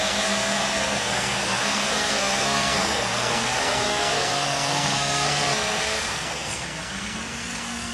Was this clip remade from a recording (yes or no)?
yes